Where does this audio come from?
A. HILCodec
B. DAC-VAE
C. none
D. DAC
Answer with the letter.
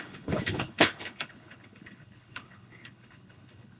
A